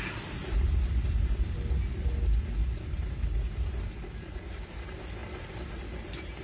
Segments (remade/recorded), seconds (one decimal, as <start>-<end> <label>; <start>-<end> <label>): 0.0-6.4 recorded